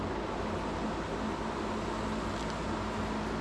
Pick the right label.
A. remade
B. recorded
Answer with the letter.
B